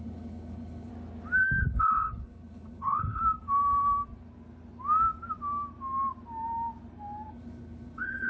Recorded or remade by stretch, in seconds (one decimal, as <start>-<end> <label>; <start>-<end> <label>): 0.0-0.9 remade; 0.9-1.6 recorded; 1.6-3.2 remade; 3.2-7.3 recorded; 7.3-8.3 remade